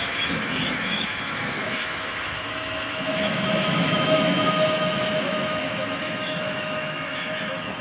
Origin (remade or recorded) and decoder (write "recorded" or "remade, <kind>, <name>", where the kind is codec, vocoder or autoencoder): remade, autoencoder, DAC-VAE